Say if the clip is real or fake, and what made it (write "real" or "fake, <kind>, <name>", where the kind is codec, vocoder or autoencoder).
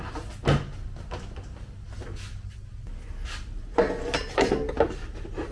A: real